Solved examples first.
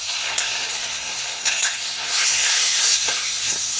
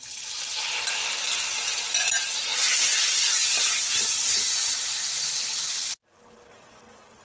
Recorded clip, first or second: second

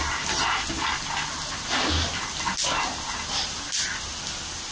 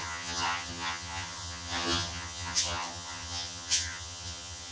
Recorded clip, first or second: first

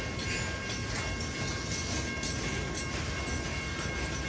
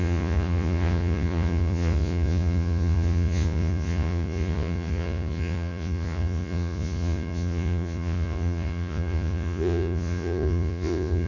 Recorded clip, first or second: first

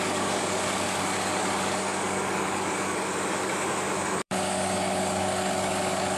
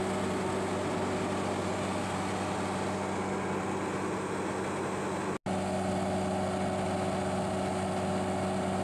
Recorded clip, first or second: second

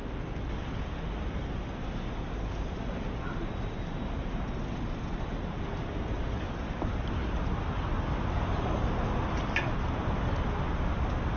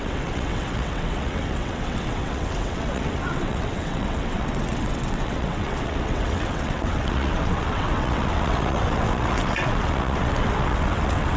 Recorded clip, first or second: first